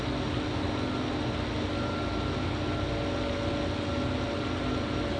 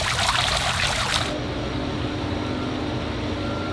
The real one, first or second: first